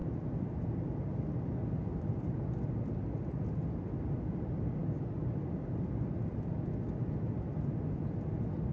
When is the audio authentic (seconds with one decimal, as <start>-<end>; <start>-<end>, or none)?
0.0-8.7